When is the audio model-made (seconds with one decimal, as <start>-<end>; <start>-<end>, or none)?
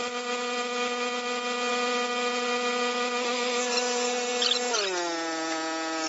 none